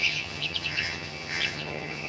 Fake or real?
fake